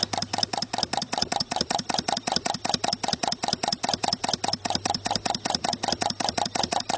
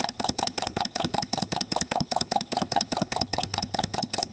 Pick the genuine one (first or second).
first